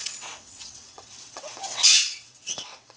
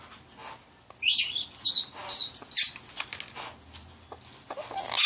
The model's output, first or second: first